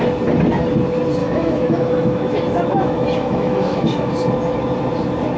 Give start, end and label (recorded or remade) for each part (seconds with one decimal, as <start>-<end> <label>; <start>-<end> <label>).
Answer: 0.0-1.2 recorded; 1.2-4.1 remade; 4.1-5.4 recorded